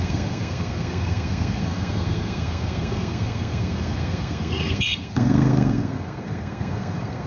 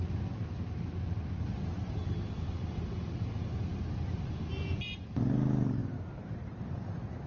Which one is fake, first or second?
first